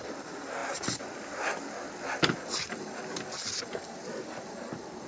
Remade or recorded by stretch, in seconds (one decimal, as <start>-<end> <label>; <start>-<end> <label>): 0.0-5.1 recorded